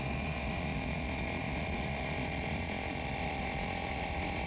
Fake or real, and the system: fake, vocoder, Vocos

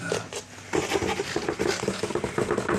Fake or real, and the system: real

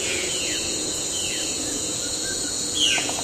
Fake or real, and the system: fake, vocoder, Vocos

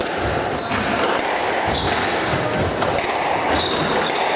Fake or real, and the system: real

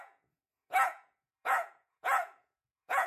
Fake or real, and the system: fake, vocoder, Vocos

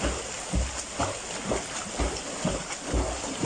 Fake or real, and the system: real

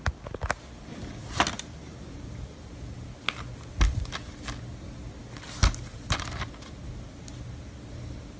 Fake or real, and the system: real